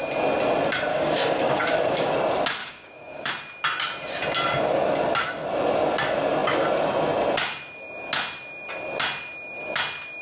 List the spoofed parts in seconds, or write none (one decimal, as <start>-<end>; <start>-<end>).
0.9-2.1; 2.6-3.3